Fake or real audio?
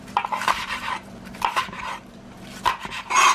fake